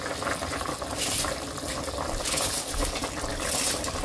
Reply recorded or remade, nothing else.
recorded